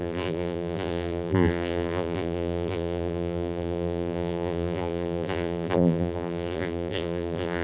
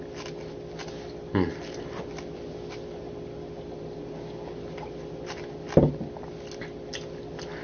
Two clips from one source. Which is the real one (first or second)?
second